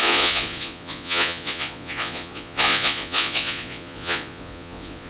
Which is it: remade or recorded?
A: remade